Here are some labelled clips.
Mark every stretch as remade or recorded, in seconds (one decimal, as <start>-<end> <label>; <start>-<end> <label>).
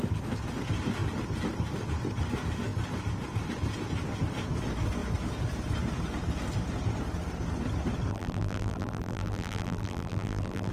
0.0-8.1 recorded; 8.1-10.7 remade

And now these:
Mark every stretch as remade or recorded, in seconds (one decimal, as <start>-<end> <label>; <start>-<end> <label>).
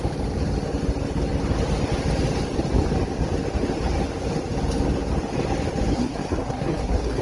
0.0-5.9 recorded; 5.9-7.2 remade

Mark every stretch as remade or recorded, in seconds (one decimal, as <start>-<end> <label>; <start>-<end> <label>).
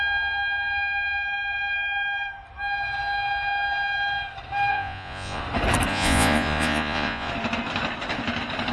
0.0-4.7 recorded; 4.7-5.4 remade; 5.4-5.9 recorded; 5.9-7.3 remade; 7.3-8.7 recorded